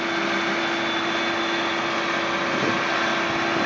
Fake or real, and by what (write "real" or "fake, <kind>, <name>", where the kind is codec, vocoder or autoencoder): real